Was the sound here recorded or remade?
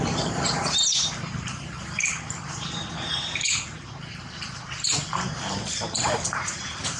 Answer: remade